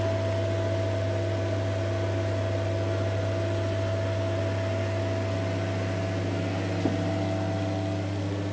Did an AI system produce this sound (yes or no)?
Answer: no